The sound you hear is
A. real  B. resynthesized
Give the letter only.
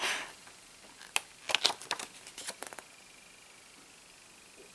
A